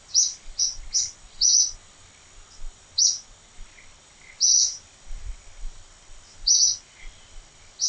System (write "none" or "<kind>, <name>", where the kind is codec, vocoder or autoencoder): none